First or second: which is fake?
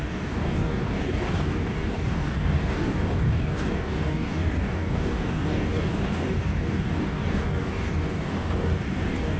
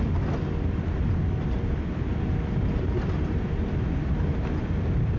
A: first